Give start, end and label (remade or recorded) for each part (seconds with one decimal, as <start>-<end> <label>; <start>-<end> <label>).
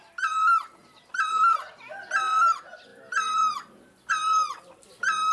0.0-0.8 recorded; 0.8-1.7 remade; 1.7-2.9 recorded; 2.9-4.1 remade; 4.1-5.3 recorded